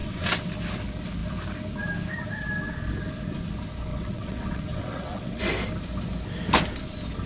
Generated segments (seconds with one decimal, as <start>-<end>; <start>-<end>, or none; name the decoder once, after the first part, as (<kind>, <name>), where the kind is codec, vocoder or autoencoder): 0.0-0.5 (vocoder, WaveNeXt); 3.9-5.4